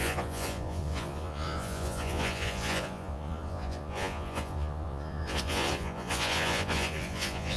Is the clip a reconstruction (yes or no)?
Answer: yes